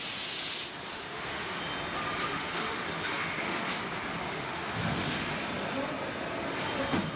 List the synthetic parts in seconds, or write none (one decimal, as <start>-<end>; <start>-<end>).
0.9-1.6; 2.3-3.8; 4.3-5.3